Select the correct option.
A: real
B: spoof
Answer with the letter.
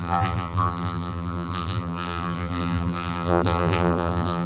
B